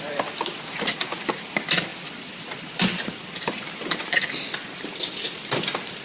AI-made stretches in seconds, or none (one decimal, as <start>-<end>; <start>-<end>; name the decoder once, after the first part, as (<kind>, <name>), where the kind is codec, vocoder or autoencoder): 1.9-5.5 (vocoder, BigVGAN v2)